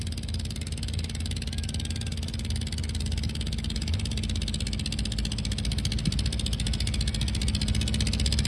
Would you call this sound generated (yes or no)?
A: no